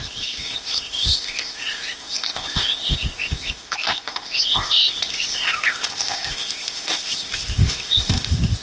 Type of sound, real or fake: fake